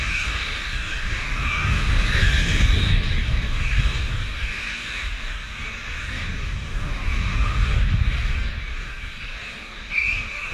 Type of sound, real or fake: fake